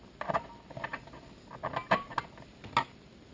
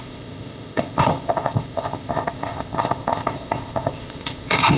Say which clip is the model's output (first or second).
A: second